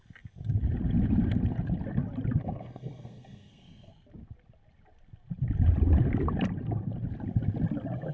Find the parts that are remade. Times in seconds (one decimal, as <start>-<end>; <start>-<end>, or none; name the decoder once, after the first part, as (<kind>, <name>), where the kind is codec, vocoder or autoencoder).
2.4-3.9 (codec, SNAC)